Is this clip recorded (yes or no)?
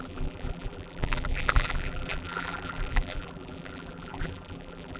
no